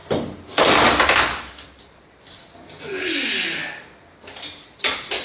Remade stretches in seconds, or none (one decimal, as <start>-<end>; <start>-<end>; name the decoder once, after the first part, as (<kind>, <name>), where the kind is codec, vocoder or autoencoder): none